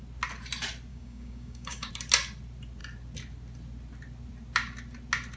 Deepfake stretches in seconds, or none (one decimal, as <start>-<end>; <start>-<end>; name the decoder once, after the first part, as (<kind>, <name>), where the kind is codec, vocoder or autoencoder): 0.9-1.9 (codec, DAC)